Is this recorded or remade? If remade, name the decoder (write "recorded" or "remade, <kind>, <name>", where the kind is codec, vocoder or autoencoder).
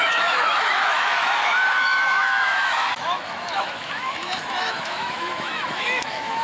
remade, autoencoder, DAC-VAE